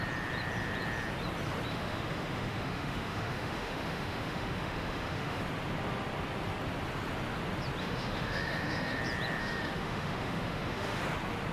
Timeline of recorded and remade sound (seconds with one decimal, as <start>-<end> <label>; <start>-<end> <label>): 0.0-1.7 recorded; 1.7-5.4 remade; 5.4-7.8 recorded; 7.8-9.0 remade; 9.0-9.4 recorded; 9.4-11.0 remade; 11.0-11.5 recorded